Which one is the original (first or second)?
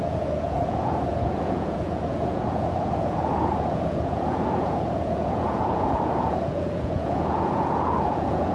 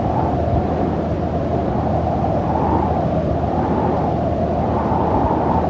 second